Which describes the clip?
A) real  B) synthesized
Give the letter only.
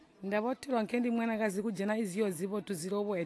A